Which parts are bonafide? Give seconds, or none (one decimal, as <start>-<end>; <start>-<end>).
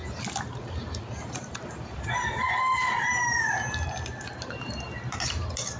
3.5-4.4; 5.0-5.8